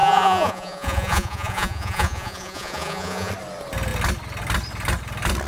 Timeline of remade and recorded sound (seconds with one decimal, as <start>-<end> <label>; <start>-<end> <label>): 0.0-3.3 remade; 3.3-5.5 recorded